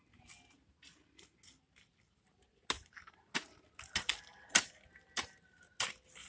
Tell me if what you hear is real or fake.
real